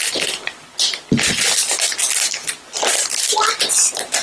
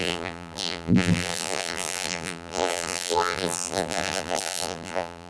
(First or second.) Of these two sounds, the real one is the first